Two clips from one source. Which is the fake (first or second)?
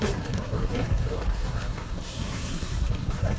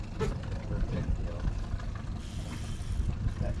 first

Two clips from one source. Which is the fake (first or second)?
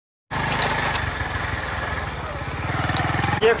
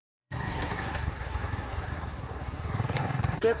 second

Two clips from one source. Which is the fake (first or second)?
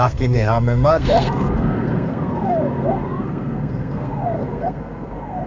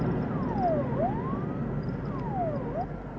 first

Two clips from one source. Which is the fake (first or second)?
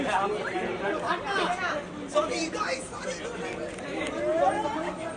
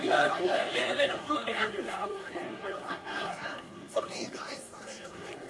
second